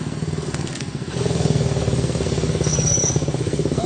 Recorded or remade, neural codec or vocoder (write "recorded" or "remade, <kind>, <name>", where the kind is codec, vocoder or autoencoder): remade, codec, SNAC